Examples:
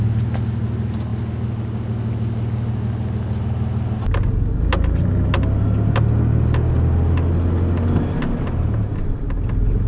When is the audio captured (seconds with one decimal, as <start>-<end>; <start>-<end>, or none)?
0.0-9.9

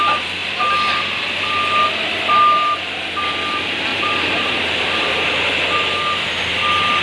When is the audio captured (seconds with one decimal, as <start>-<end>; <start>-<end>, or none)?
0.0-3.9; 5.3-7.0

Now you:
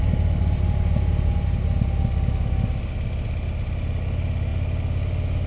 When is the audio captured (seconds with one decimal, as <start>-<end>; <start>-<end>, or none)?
0.0-5.5

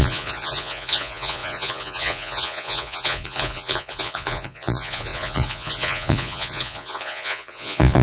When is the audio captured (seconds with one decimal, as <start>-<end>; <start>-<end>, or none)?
none